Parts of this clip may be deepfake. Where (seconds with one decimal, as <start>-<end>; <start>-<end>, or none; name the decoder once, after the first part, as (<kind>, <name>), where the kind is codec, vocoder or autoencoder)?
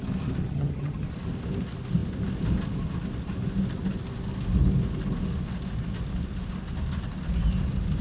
0.4-1.1 (vocoder, HiFi-GAN)